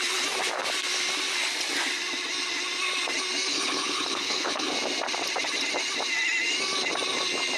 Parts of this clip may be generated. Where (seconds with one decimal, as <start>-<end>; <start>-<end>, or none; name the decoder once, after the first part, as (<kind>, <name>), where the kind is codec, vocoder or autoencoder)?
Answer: 3.5-4.7 (codec, HILCodec)